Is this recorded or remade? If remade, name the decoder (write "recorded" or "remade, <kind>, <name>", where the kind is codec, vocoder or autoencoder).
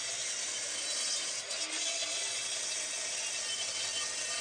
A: recorded